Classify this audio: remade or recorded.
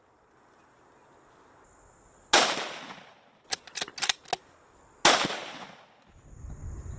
recorded